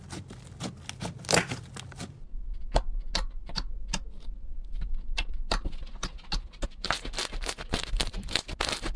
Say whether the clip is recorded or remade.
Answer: recorded